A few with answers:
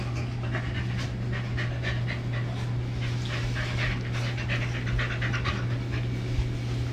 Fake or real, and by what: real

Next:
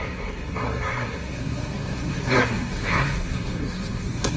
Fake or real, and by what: fake, codec, SNAC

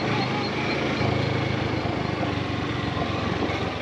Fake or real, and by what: real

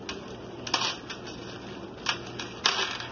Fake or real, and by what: real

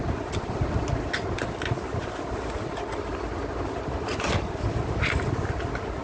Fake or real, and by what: real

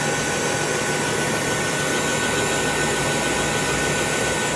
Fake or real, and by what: real